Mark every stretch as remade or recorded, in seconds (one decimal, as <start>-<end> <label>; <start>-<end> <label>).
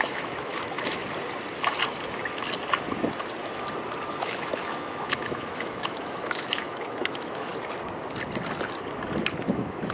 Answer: 0.0-1.0 remade; 1.0-4.1 recorded; 4.1-7.5 remade; 7.5-9.3 recorded; 9.3-9.9 remade